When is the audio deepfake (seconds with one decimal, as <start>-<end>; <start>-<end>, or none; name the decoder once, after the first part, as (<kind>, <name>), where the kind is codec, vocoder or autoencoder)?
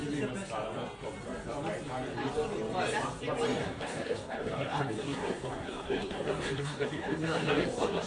3.6-8.1 (codec, SNAC)